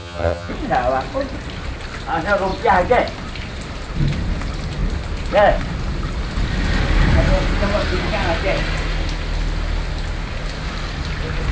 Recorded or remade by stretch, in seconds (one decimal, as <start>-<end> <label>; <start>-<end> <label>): 0.0-0.5 remade; 0.5-11.5 recorded